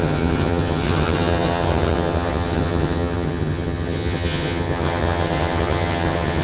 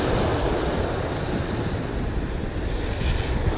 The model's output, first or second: first